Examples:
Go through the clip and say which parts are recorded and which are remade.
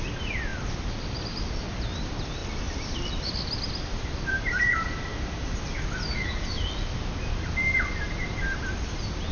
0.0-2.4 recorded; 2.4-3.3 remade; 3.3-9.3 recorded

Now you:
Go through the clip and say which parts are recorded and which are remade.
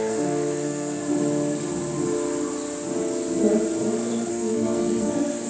0.0-1.0 remade; 1.0-4.3 recorded; 4.3-5.5 remade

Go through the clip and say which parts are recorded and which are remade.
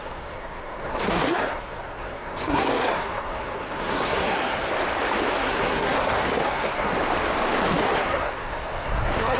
0.0-4.7 remade; 4.7-5.4 recorded; 5.4-6.9 remade; 6.9-7.8 recorded; 7.8-9.4 remade